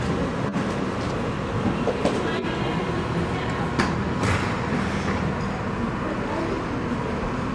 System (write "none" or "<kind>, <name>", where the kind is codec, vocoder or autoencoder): none